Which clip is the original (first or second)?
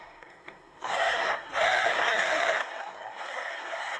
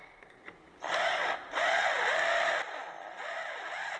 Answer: second